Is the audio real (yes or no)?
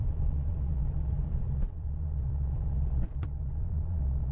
no